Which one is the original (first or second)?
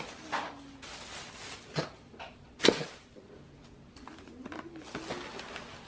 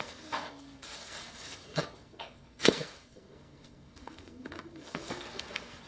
first